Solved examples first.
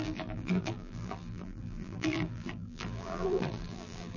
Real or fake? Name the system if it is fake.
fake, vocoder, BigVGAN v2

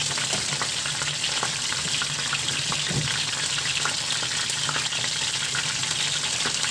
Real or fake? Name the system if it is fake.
real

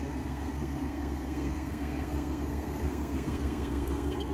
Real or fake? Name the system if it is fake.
fake, codec, SNAC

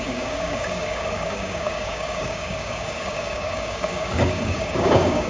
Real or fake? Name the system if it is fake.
fake, codec, DAC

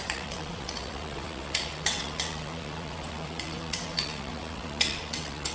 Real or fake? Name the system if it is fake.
fake, vocoder, WaveNeXt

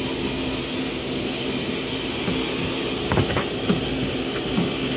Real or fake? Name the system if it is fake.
real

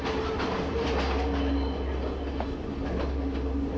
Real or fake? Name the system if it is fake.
real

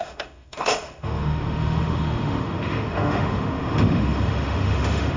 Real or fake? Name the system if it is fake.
fake, autoencoder, DAC-VAE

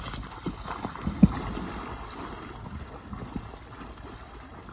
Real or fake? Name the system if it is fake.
real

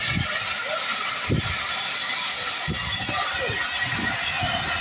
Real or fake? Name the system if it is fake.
real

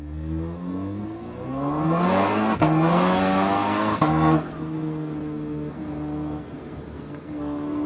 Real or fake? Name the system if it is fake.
fake, codec, SNAC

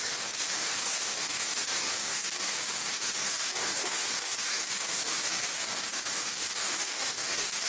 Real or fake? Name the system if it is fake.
fake, codec, DAC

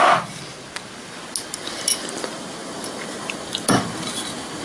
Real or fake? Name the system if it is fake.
real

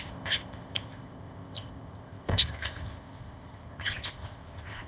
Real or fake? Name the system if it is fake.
fake, codec, ZipCodec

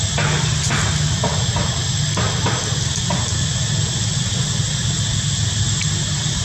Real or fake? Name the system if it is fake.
real